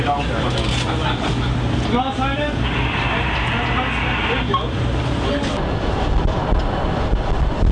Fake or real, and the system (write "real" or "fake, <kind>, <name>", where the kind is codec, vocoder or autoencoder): real